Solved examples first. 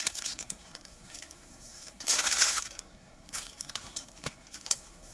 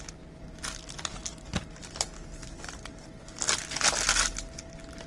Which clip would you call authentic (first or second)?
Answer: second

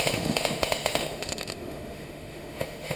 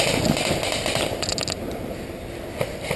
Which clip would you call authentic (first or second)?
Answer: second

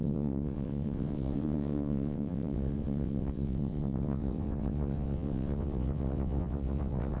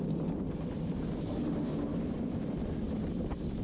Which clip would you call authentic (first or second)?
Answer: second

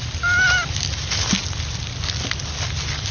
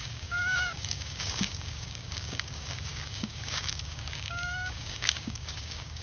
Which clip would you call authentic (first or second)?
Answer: first